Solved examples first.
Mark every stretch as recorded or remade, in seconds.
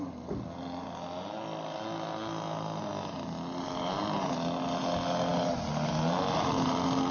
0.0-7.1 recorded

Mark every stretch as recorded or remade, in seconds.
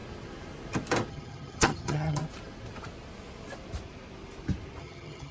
0.0-1.1 recorded; 1.1-2.2 remade; 2.2-4.8 recorded; 4.8-5.3 remade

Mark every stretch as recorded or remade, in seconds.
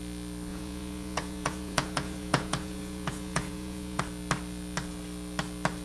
0.0-0.5 recorded; 0.5-4.0 remade; 4.0-5.8 recorded